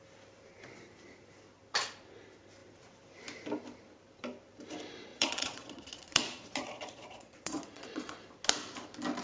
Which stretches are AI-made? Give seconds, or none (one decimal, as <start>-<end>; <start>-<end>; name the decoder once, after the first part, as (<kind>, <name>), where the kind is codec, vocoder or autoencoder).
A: 5.1-8.3 (vocoder, Vocos)